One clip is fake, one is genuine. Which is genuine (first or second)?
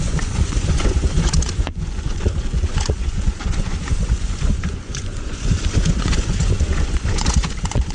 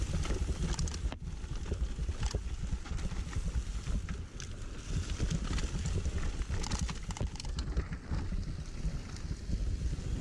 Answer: second